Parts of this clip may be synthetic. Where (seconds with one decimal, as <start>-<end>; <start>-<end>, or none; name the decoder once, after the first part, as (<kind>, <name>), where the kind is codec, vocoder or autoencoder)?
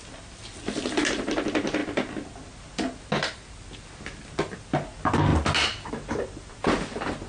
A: none